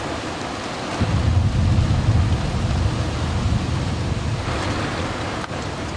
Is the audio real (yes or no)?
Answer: yes